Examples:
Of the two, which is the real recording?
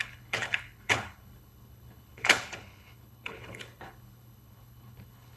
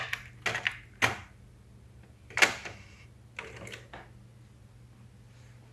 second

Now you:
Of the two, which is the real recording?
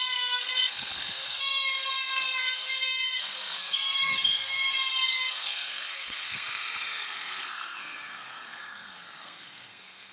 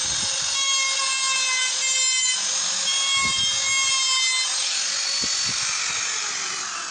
second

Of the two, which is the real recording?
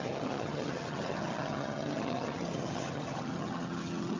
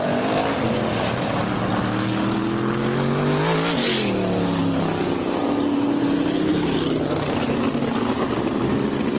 second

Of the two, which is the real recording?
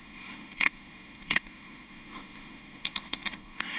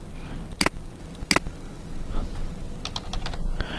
second